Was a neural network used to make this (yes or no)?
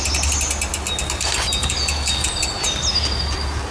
no